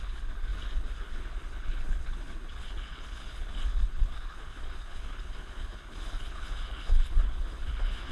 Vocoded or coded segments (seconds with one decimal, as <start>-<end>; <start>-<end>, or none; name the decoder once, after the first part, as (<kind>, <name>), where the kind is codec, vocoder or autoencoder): 0.0-8.1 (codec, HILCodec)